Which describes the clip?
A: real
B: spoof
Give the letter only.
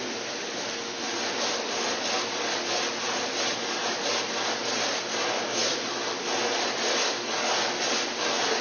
A